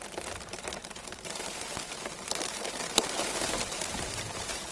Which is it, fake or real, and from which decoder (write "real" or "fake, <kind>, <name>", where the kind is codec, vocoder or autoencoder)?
fake, vocoder, BigVGAN v2